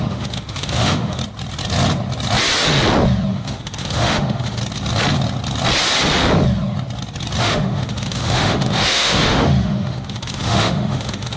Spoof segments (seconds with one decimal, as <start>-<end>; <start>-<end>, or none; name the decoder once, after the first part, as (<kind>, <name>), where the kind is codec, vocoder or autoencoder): 0.0-1.2 (autoencoder, DAC-VAE); 3.3-4.6; 7.4-11.4